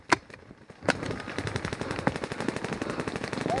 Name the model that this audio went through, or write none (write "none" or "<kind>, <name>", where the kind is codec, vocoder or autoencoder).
none